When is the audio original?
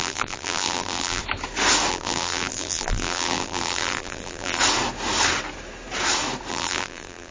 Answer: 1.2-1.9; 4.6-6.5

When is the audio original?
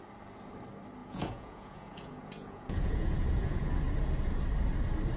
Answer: 0.0-1.0; 3.6-5.2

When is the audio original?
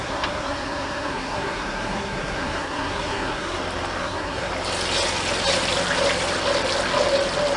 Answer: 3.6-4.0; 4.5-7.6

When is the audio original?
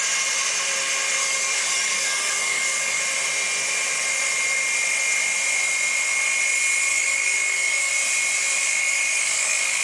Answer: 0.0-1.2; 3.0-6.9; 7.9-8.6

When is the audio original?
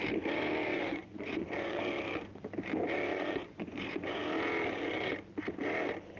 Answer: 0.0-0.7; 1.8-3.1; 4.2-6.2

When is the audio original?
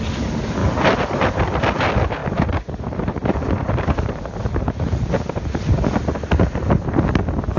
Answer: 0.0-7.6